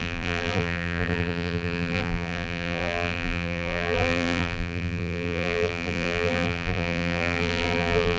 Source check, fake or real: fake